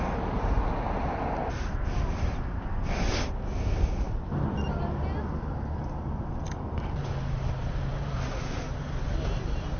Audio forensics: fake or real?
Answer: real